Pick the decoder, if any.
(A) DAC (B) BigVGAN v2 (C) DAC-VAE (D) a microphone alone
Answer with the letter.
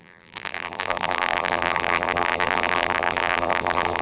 B